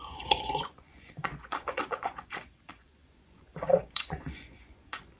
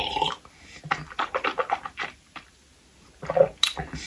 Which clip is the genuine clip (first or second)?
second